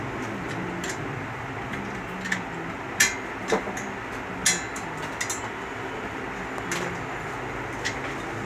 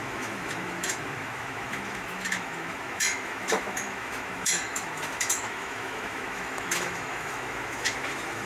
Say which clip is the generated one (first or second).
second